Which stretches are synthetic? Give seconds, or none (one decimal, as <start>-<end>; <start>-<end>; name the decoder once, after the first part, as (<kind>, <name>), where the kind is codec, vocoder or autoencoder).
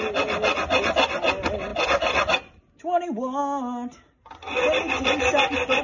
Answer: none